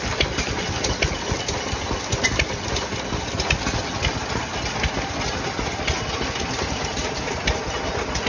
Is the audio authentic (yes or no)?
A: yes